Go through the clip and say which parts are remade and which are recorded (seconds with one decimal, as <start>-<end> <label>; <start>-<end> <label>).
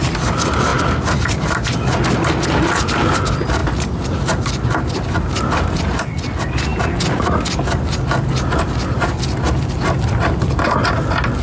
0.0-11.4 recorded